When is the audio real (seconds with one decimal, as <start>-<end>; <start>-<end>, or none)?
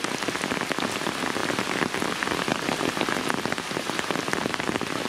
0.0-2.5; 3.0-5.1